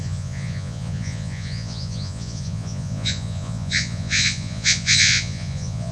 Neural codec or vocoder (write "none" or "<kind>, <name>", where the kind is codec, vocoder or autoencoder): vocoder, Vocos